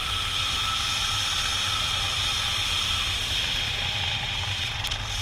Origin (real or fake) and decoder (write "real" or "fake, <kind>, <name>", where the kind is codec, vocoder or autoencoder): real